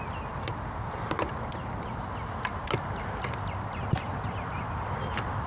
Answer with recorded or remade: recorded